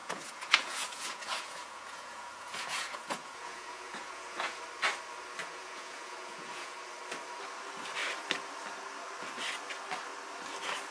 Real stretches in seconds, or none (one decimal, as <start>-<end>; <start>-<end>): 4.6-5.4; 6.8-10.9